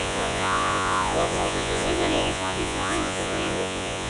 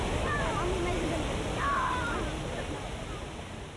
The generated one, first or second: first